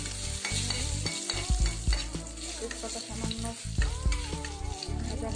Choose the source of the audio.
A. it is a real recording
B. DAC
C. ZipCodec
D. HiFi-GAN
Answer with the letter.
A